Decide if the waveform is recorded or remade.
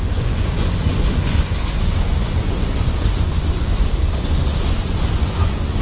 remade